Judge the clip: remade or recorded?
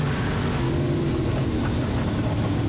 remade